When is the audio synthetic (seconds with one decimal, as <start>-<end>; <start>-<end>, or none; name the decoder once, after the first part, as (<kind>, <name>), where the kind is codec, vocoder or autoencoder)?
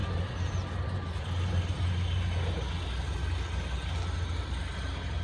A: none